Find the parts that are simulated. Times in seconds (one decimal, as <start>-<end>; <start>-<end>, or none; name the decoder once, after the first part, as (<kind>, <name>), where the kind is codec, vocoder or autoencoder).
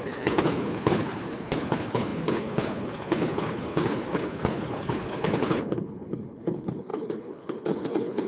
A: 0.0-8.3 (codec, HILCodec)